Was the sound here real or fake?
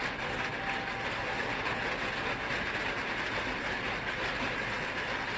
real